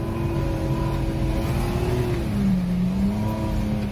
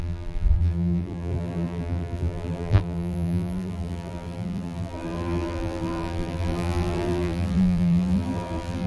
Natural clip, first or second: first